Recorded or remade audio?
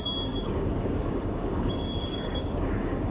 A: remade